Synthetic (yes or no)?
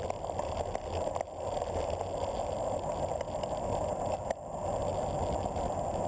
no